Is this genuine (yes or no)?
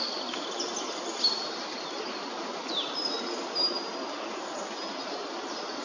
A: yes